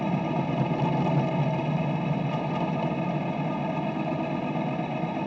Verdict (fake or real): real